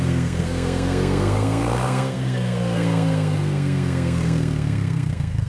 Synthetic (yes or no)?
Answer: yes